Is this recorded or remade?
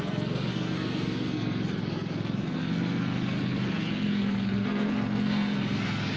remade